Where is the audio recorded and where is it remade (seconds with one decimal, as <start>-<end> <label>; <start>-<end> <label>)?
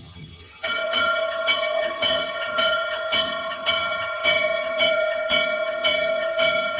0.0-6.8 remade